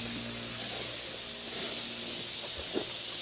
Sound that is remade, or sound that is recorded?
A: recorded